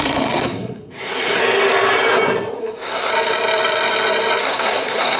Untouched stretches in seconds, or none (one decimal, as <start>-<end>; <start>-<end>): 1.4-2.6; 3.1-4.4